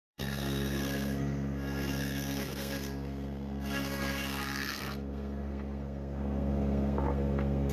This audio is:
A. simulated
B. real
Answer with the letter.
A